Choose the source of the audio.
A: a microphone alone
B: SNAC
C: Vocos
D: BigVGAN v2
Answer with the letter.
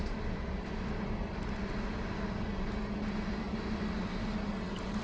A